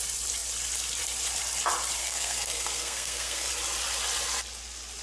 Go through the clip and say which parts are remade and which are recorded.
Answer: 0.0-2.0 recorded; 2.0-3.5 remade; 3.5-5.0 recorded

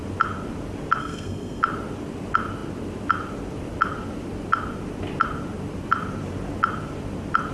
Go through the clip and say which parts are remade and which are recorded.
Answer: 0.0-1.0 recorded; 1.0-1.6 remade; 1.6-7.5 recorded

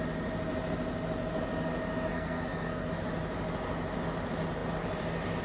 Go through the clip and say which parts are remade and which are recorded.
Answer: 0.0-2.1 recorded; 2.1-2.9 remade; 2.9-5.4 recorded

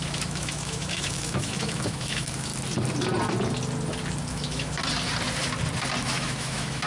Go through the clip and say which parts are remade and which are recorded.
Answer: 0.0-2.5 remade; 2.5-4.3 recorded; 4.3-4.8 remade; 4.8-6.0 recorded; 6.0-6.9 remade

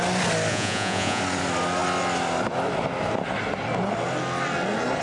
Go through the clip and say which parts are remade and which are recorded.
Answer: 0.0-0.5 recorded; 0.5-1.2 remade; 1.2-5.0 recorded

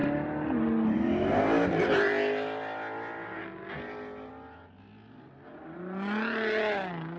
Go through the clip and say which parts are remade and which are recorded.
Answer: 0.0-7.2 recorded